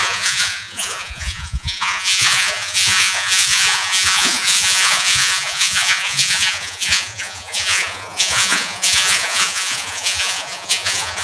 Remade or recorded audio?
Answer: remade